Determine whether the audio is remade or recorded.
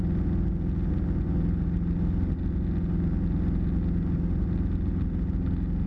recorded